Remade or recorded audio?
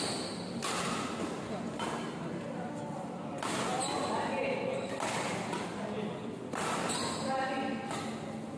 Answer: recorded